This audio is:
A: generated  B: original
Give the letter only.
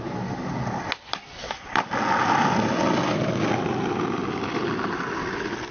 B